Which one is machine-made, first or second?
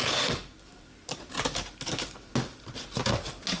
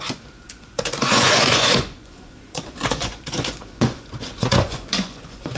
second